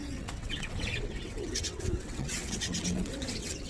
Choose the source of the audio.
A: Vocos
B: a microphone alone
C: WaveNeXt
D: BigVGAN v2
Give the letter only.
C